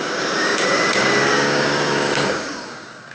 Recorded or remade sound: remade